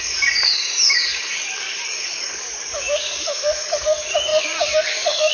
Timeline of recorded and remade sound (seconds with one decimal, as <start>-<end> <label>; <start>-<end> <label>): 0.0-5.3 remade